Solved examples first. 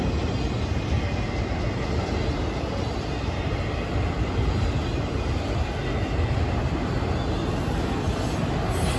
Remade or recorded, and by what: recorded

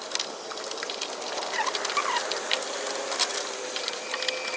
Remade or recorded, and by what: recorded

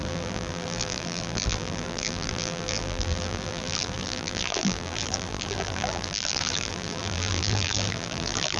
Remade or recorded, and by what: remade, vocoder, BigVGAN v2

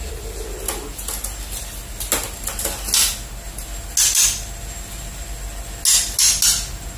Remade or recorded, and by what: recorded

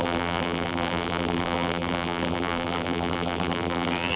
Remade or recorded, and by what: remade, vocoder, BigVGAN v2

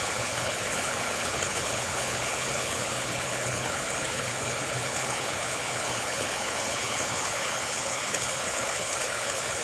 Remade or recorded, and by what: remade, codec, HILCodec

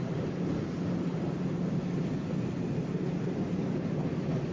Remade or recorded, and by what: recorded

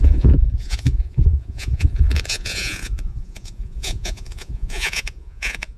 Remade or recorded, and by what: remade, vocoder, Vocos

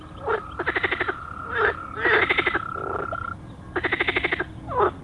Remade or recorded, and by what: recorded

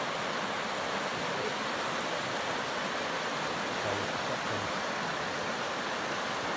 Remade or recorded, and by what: recorded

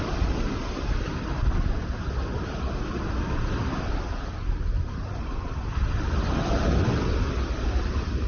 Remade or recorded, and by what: recorded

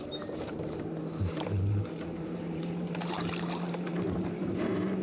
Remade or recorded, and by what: remade, vocoder, BigVGAN v2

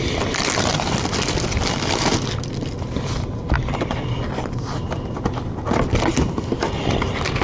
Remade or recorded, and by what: remade, vocoder, BigVGAN v2